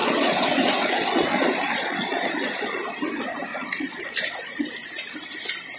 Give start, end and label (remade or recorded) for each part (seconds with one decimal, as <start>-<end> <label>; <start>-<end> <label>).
0.0-2.3 remade; 2.3-3.5 recorded; 3.5-4.1 remade; 4.1-5.8 recorded